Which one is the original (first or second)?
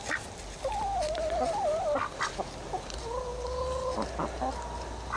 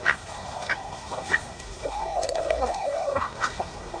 first